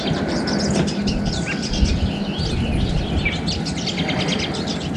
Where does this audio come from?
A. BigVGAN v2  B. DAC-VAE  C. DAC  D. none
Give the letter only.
D